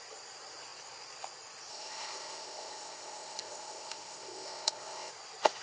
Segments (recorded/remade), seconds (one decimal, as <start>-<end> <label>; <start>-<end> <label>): 0.0-1.7 recorded; 1.7-5.1 remade; 5.1-5.6 recorded